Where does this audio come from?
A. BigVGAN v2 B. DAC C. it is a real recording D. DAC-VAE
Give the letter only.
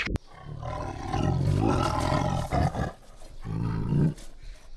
C